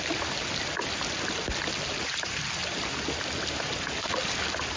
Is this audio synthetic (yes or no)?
no